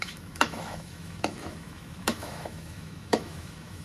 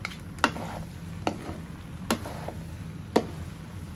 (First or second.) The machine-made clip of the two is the first